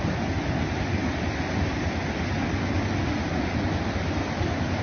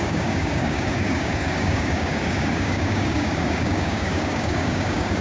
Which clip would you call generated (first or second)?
second